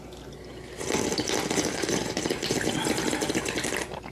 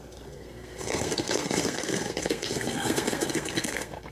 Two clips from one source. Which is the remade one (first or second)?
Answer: second